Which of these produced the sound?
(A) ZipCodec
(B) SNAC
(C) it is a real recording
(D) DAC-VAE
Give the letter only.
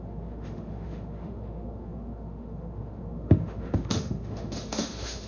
D